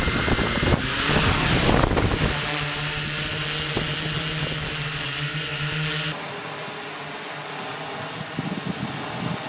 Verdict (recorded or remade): recorded